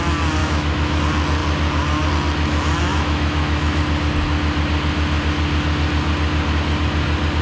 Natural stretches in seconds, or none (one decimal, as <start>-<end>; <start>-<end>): 0.0-0.4; 1.0-2.9; 3.8-7.4